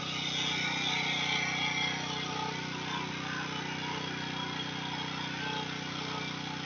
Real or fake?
real